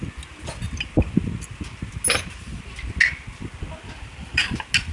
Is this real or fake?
real